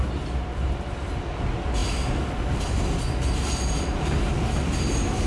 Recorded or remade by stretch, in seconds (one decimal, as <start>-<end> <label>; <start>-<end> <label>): 0.0-5.3 recorded